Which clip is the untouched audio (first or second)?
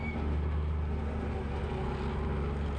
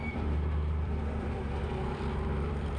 first